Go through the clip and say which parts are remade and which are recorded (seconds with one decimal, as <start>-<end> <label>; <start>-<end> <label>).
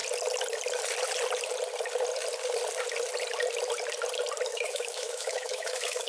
0.0-4.5 recorded; 4.5-6.1 remade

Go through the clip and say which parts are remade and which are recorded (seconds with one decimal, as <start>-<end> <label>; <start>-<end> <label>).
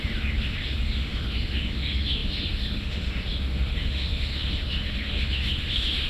0.0-6.1 remade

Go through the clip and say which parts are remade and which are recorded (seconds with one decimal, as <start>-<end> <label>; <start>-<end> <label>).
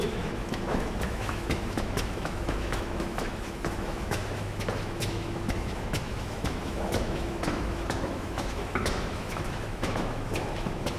0.0-11.0 remade